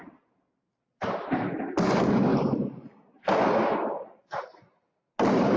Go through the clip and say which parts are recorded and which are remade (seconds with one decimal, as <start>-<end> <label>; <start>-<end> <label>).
0.0-0.7 recorded; 0.7-1.4 remade; 1.4-2.3 recorded; 2.3-4.2 remade; 4.2-5.6 recorded